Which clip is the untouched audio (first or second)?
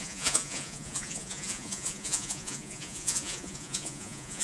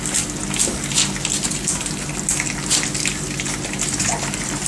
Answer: second